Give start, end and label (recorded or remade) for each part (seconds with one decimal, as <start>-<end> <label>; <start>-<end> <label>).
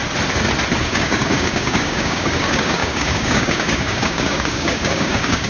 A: 0.0-0.8 recorded; 0.8-5.5 remade